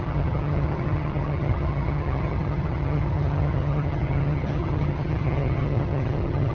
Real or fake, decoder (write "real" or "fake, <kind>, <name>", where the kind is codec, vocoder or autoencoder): fake, vocoder, HiFi-GAN